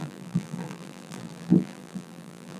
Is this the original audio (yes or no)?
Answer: no